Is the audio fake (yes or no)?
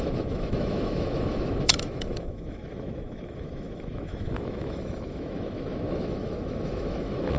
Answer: yes